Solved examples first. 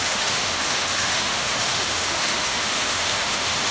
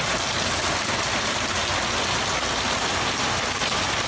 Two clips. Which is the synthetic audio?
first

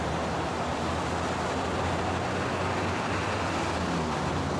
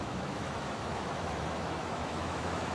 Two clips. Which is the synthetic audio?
second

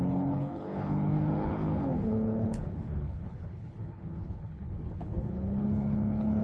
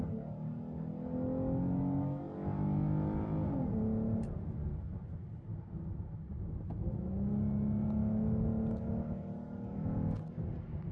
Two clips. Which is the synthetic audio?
first